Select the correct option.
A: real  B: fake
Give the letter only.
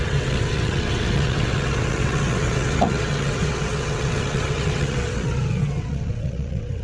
B